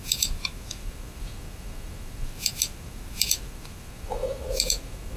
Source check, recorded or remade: remade